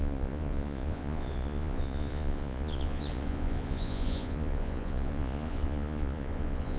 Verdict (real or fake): fake